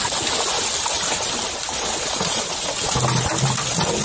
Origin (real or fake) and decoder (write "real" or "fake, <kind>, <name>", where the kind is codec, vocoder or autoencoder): real